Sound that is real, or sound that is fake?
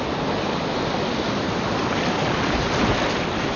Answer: real